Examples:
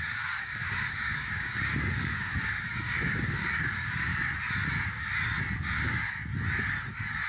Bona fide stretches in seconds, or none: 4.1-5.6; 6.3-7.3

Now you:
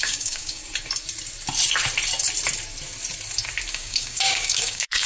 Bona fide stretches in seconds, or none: 0.6-3.7